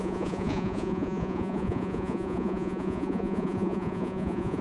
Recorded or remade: remade